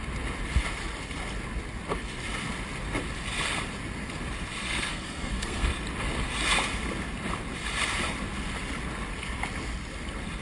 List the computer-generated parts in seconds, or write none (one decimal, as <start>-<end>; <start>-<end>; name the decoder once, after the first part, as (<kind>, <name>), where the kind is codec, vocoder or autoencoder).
4.6-5.7 (codec, SNAC)